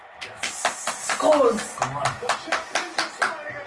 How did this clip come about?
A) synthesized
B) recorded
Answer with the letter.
B